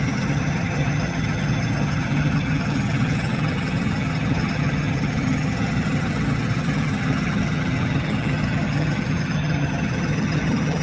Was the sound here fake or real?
fake